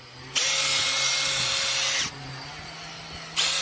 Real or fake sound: real